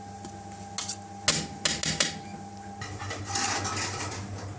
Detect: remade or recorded recorded